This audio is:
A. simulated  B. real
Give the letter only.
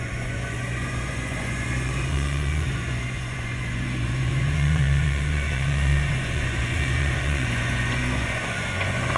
A